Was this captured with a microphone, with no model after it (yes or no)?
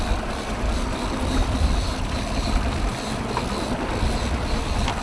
yes